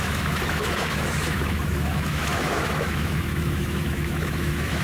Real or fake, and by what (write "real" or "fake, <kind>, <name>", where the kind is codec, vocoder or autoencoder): fake, autoencoder, DAC-VAE